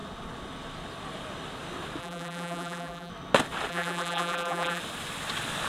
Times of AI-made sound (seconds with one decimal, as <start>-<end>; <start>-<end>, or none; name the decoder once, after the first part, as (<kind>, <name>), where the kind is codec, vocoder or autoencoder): 2.0-3.1 (vocoder, BigVGAN v2); 3.7-4.8